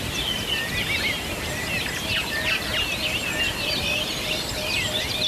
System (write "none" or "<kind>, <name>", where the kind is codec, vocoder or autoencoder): vocoder, BigVGAN v2